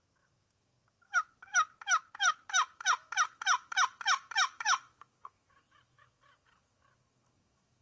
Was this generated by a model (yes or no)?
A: yes